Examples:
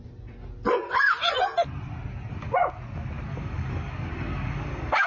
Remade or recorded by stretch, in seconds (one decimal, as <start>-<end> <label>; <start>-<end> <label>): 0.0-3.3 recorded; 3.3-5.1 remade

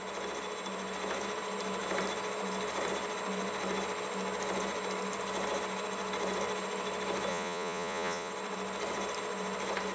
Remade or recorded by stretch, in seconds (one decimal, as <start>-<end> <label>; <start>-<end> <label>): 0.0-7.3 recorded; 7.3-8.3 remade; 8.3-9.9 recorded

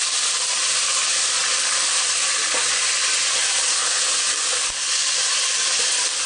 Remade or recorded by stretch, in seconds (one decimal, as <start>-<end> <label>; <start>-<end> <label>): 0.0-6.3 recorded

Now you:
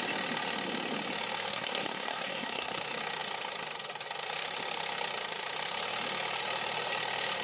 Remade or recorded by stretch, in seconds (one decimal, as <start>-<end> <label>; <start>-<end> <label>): 0.0-1.5 recorded; 1.5-2.8 remade; 2.8-7.4 recorded

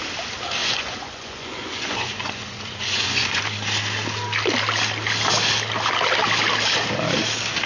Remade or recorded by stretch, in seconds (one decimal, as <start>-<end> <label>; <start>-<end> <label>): 0.0-0.6 recorded; 0.6-3.4 remade; 3.4-7.7 recorded